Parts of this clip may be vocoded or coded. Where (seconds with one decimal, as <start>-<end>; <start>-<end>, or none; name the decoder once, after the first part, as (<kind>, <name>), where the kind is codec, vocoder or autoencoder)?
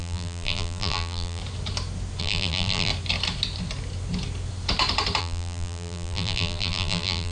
0.0-1.4 (vocoder, BigVGAN v2); 2.2-2.9; 5.2-7.3